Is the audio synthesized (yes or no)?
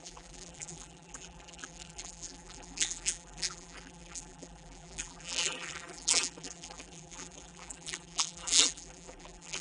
yes